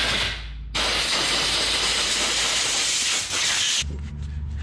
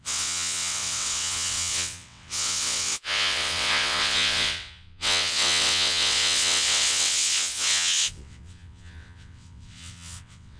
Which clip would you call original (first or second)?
first